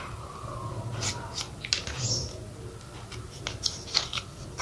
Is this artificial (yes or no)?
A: yes